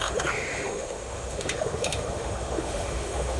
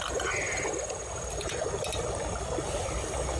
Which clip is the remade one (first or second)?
first